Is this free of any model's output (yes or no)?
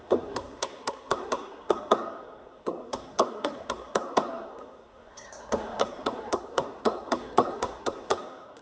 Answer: no